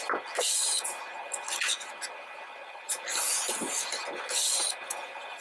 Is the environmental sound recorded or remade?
recorded